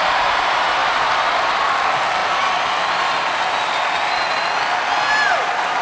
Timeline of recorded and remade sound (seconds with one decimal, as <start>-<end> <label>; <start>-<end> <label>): 0.0-5.8 recorded